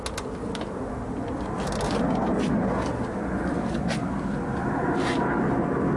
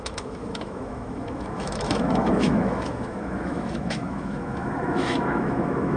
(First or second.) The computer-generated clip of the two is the second